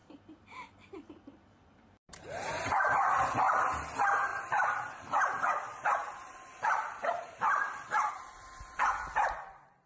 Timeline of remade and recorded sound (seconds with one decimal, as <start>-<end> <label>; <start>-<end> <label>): 0.0-3.3 remade; 3.3-4.3 recorded; 4.3-8.1 remade; 8.1-9.9 recorded

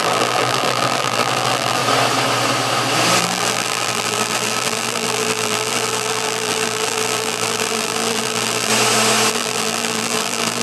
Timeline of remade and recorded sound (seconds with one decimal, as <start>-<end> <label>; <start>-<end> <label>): 0.0-1.8 remade; 1.8-3.2 recorded; 3.2-8.7 remade; 8.7-9.3 recorded; 9.3-10.6 remade

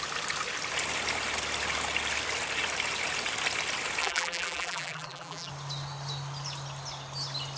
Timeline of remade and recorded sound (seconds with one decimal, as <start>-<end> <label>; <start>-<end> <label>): 0.0-4.0 recorded; 4.0-5.5 remade; 5.5-7.6 recorded

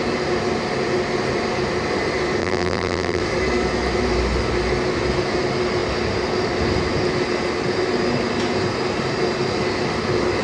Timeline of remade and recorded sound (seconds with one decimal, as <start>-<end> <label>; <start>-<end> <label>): 0.0-2.4 recorded; 2.4-3.2 remade; 3.2-10.4 recorded